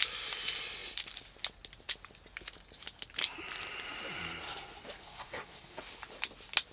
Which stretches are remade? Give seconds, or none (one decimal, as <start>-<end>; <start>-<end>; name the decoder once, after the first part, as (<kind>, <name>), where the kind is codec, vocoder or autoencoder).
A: 5.0-5.8 (codec, SNAC)